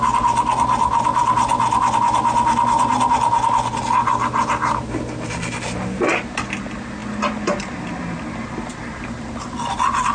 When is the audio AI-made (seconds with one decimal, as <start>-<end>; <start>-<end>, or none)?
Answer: none